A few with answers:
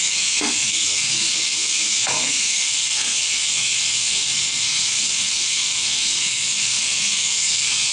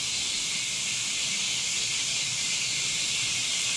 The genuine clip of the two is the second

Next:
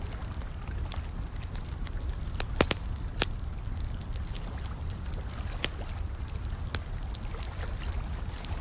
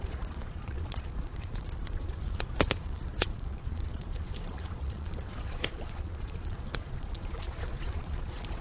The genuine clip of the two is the first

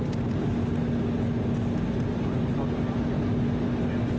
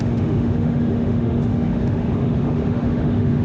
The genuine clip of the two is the first